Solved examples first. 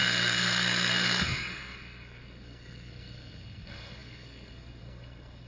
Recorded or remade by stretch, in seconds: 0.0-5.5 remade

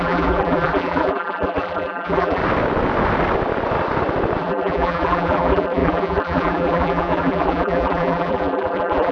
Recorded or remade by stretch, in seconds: 0.0-2.4 remade; 2.4-4.4 recorded; 4.4-9.1 remade

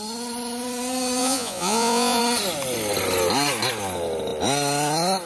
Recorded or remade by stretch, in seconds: 0.0-1.2 recorded; 1.2-2.2 remade; 2.2-5.3 recorded

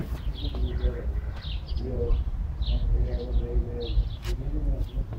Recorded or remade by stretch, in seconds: 0.0-5.2 recorded

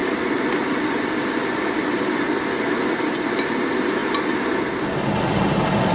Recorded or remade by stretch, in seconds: 0.0-5.9 recorded

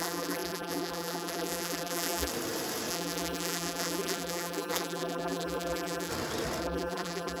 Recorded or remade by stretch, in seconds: 0.0-2.3 remade; 2.3-2.9 recorded; 2.9-6.1 remade; 6.1-6.6 recorded; 6.6-7.4 remade